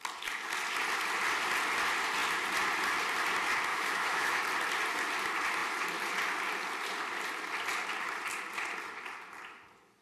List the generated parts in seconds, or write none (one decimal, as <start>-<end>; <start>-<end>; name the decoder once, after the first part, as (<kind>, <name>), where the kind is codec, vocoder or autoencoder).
3.7-4.4 (autoencoder, DAC-VAE)